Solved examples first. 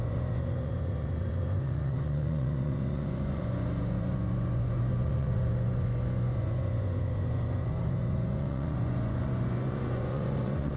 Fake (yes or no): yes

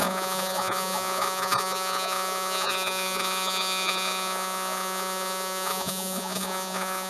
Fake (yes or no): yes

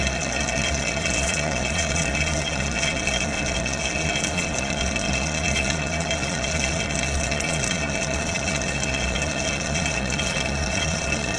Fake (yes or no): yes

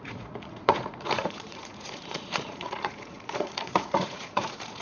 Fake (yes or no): yes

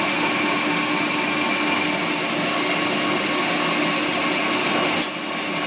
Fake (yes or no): no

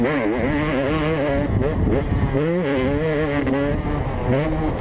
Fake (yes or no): no